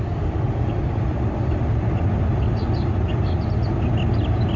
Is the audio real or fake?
real